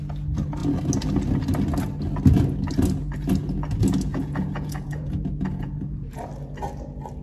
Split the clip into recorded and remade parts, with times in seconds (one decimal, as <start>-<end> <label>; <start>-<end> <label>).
0.0-4.1 recorded; 4.1-6.2 remade; 6.2-7.2 recorded